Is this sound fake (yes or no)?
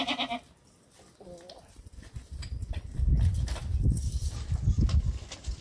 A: yes